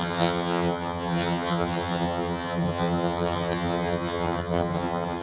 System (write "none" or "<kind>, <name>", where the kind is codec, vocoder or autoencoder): vocoder, HiFi-GAN